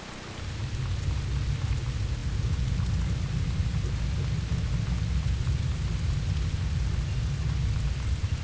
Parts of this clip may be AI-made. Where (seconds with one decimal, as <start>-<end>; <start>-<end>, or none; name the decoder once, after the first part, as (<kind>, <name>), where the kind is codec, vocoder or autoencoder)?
none